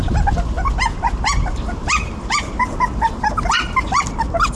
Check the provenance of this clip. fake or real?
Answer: real